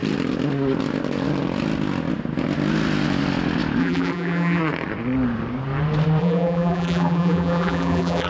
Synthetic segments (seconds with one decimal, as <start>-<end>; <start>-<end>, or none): 3.8-4.6; 6.2-8.3

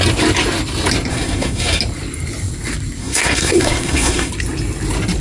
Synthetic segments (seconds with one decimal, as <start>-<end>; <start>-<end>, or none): 1.1-1.8; 3.0-4.3

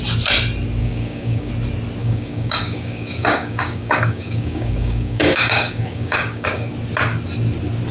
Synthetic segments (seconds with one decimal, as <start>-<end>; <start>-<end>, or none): 0.8-1.5; 2.0-6.7

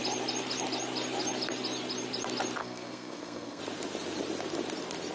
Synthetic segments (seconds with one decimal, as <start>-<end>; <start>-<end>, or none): 2.6-3.6